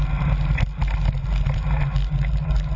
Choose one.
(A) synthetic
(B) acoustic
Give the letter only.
B